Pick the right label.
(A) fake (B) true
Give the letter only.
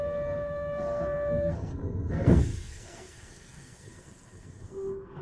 A